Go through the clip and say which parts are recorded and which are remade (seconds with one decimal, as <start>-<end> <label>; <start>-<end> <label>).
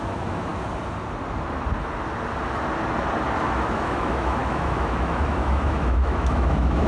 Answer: 0.0-0.5 remade; 0.5-3.4 recorded; 3.4-6.9 remade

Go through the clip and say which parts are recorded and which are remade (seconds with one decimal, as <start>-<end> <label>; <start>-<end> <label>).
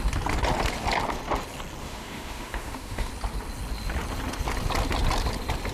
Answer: 0.0-1.8 recorded; 1.8-3.1 remade; 3.1-5.7 recorded